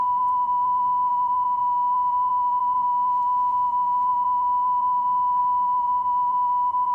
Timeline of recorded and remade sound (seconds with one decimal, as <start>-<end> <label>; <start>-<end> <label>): 0.0-6.9 remade